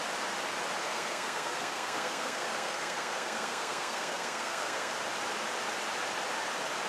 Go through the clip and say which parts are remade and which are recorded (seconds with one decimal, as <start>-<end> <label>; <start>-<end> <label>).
0.0-0.8 recorded; 0.8-4.9 remade; 4.9-6.9 recorded